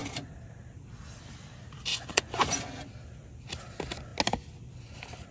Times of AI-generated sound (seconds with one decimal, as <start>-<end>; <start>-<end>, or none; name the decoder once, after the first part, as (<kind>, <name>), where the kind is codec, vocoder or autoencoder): 1.9-2.6 (vocoder, Vocos)